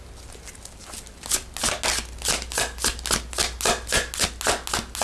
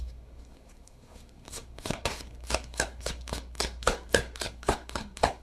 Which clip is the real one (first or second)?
first